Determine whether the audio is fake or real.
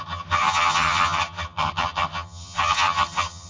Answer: fake